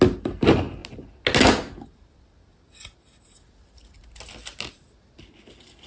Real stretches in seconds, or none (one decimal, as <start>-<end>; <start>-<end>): 0.0-5.9